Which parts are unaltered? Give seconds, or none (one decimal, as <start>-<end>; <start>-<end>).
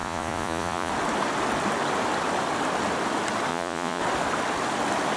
0.9-3.5; 4.0-5.2